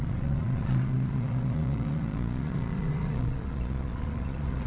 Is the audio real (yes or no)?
no